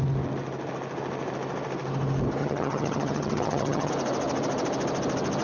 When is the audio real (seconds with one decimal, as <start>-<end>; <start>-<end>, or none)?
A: 0.0-2.4; 3.9-5.4